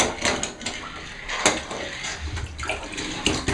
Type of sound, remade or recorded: recorded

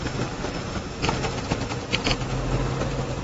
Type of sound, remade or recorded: recorded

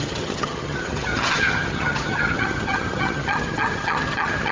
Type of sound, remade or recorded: remade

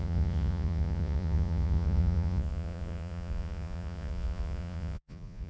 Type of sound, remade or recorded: remade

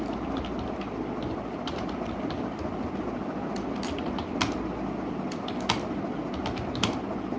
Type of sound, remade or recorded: recorded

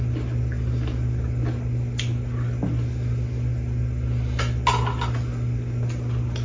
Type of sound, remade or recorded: recorded